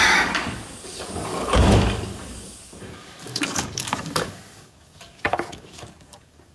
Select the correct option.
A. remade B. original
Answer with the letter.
A